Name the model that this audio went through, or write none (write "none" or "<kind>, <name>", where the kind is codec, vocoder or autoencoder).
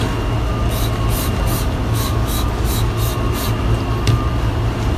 none